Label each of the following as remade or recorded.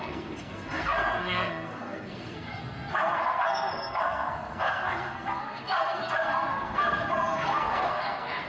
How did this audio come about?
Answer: remade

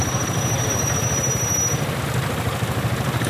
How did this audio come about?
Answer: recorded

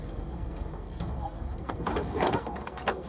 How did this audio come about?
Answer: remade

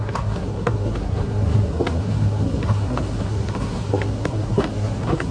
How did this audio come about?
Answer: remade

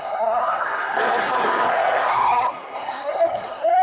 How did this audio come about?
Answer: remade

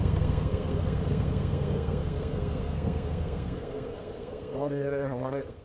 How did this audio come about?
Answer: remade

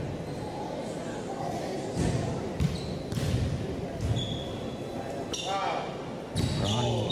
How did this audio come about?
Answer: recorded